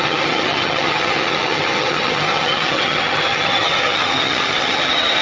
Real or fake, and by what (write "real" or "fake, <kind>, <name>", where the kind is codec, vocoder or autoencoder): fake, vocoder, HiFi-GAN